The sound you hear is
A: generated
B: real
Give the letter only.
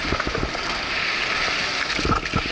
B